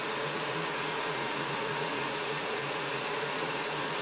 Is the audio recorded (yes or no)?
no